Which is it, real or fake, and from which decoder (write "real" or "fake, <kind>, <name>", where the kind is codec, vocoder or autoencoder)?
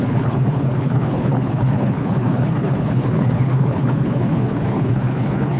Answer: fake, codec, HILCodec